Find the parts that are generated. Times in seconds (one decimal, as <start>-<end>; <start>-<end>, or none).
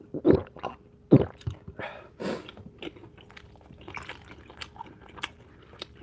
none